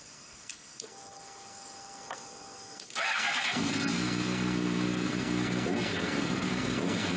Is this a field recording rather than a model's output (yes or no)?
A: no